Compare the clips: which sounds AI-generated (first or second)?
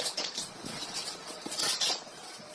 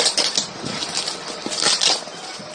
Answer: first